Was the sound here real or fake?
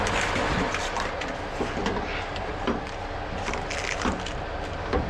real